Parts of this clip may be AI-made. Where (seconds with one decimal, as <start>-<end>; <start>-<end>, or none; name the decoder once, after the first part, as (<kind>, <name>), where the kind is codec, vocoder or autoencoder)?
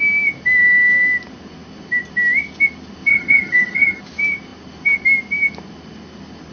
3.1-4.0 (vocoder, HiFi-GAN)